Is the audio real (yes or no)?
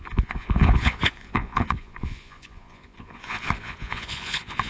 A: no